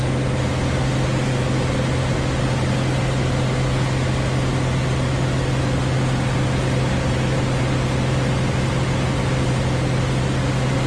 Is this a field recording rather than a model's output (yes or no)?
yes